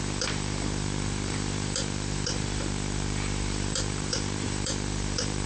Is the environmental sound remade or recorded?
remade